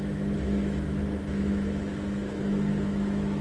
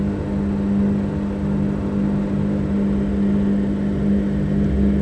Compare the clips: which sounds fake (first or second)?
first